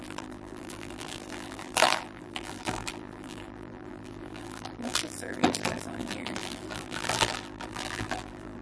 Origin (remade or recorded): remade